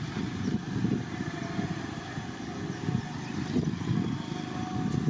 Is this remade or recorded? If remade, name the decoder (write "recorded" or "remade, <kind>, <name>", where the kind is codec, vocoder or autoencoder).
recorded